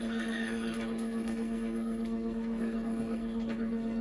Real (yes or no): no